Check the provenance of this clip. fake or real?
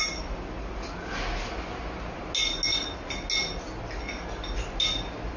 real